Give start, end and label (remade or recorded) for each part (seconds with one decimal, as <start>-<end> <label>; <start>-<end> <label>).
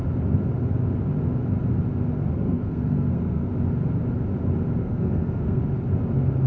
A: 0.0-2.3 recorded; 2.3-3.5 remade; 3.5-4.8 recorded; 4.8-5.6 remade; 5.6-6.5 recorded